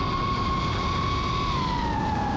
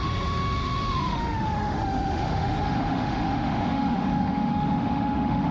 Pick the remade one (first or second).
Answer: second